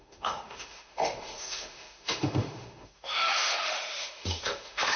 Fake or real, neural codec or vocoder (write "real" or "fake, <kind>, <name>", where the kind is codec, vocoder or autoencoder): fake, autoencoder, DAC-VAE